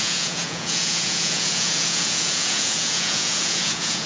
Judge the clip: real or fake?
fake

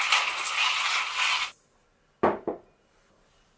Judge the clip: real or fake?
real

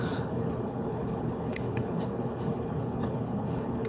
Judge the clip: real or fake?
fake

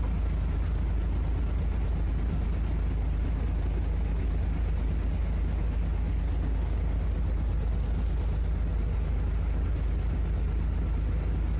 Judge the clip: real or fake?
real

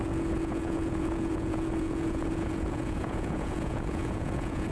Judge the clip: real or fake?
fake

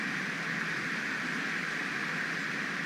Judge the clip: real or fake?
real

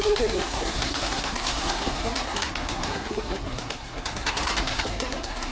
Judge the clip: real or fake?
fake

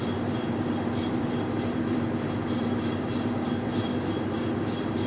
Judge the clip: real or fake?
fake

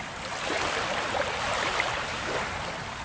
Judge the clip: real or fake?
real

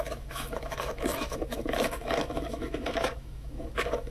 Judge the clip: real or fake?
fake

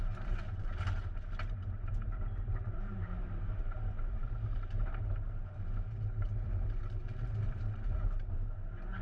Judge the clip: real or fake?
fake